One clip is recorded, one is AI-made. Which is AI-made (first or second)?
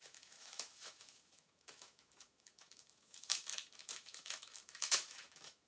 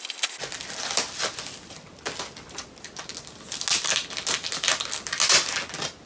first